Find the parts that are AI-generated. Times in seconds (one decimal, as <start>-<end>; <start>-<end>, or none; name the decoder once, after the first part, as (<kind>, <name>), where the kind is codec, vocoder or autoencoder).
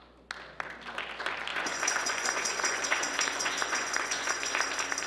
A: 1.5-4.6 (vocoder, Vocos)